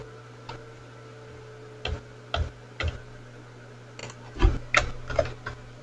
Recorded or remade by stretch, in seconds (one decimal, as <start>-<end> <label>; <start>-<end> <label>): 0.0-5.8 recorded